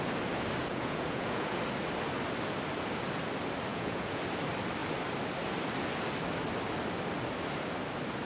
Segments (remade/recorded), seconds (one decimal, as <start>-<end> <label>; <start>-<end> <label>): 0.0-0.6 recorded; 0.6-1.6 remade; 1.6-3.7 recorded; 3.7-4.2 remade; 4.2-8.2 recorded